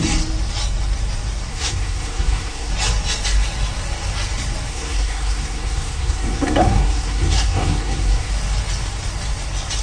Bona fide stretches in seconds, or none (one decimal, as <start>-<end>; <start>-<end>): 0.0-1.5; 2.7-4.7; 8.3-9.8